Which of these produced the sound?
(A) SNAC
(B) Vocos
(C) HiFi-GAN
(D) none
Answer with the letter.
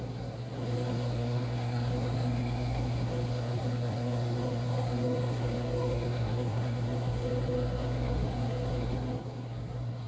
A